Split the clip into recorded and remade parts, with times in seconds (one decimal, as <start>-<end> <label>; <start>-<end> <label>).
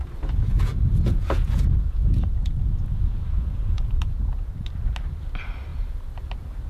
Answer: 0.0-0.5 recorded; 0.5-4.5 remade; 4.5-6.7 recorded